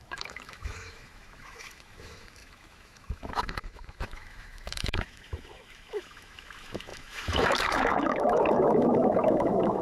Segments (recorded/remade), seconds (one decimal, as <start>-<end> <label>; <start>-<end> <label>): 0.0-9.8 remade